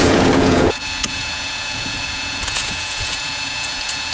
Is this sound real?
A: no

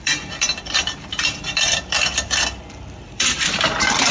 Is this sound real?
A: no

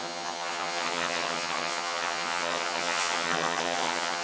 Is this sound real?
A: no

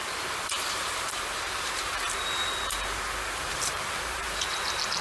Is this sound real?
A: no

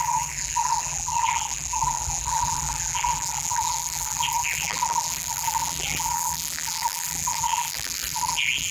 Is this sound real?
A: no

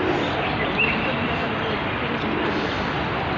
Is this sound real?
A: no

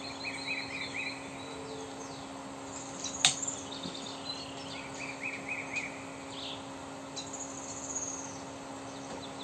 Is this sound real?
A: yes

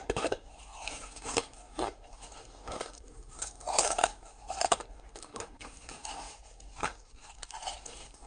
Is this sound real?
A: no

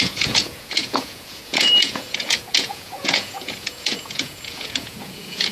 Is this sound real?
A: no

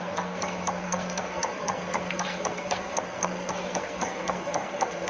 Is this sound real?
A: no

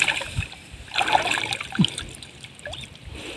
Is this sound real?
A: no